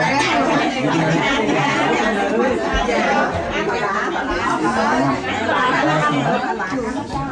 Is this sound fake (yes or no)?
no